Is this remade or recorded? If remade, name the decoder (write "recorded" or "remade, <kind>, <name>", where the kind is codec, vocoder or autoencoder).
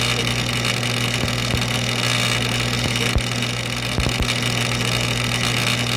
recorded